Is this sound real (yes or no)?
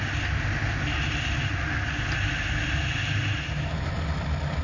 yes